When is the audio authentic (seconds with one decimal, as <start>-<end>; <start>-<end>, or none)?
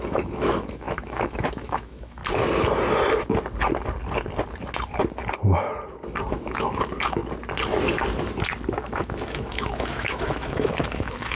2.2-6.3; 7.2-8.8